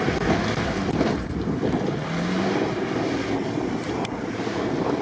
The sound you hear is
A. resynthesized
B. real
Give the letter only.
B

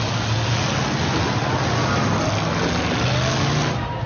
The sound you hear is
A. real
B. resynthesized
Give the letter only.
A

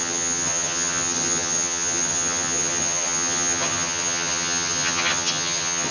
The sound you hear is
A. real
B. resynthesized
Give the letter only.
B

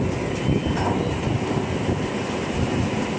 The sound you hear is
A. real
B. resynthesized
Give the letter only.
A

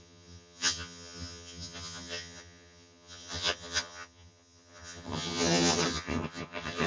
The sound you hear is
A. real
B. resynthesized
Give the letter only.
B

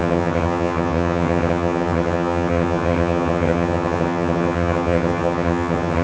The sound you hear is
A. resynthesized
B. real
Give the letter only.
A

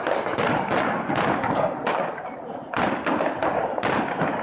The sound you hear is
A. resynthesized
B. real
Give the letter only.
B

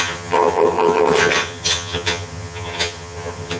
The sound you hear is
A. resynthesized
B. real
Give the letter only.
A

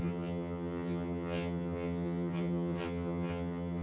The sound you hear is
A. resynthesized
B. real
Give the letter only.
A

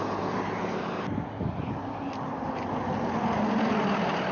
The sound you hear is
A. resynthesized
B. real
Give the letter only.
B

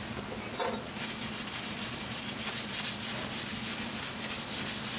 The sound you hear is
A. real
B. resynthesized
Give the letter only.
A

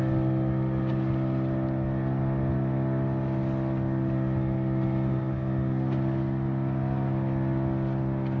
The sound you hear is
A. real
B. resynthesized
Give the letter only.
A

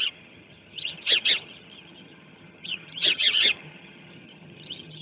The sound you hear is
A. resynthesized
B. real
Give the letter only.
A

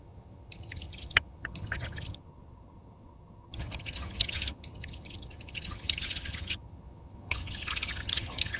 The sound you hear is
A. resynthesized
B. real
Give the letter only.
A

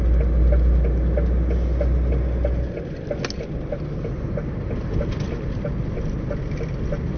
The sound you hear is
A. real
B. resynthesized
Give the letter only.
A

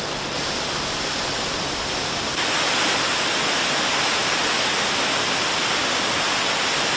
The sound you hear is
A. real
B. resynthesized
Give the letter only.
A